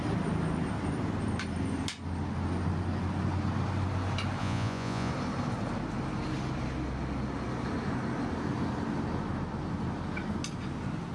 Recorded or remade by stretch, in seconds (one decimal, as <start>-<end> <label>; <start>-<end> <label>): 0.0-4.4 recorded; 4.4-5.1 remade; 5.1-11.1 recorded